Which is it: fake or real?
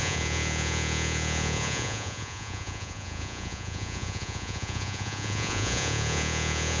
fake